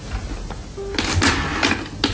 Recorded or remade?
recorded